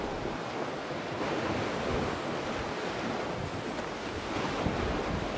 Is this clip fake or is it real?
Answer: real